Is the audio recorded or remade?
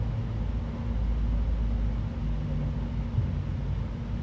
recorded